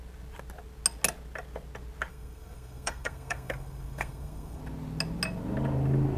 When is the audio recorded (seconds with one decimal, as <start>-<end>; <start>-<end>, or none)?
0.0-2.1; 4.6-6.2

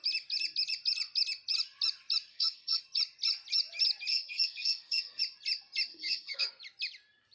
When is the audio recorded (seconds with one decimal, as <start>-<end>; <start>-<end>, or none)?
0.0-2.3; 2.8-4.1; 5.2-5.9; 6.5-7.3

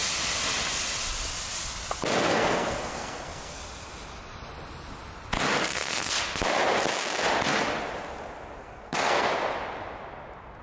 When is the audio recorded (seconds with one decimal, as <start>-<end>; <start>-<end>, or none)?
0.0-2.3; 3.6-5.6; 6.2-8.6; 9.3-10.6

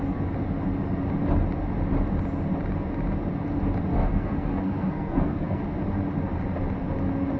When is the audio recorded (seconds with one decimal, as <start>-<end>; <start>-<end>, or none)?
0.0-3.9; 5.6-7.4

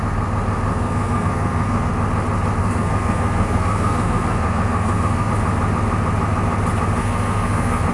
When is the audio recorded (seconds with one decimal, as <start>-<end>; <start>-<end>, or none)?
0.0-0.7; 1.9-2.6; 5.3-7.0